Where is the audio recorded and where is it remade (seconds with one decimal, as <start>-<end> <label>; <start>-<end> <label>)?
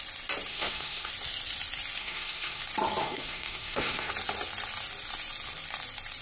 0.0-0.5 recorded; 0.5-1.1 remade; 1.1-2.0 recorded; 2.0-2.6 remade; 2.6-3.0 recorded; 3.0-4.1 remade; 4.1-6.2 recorded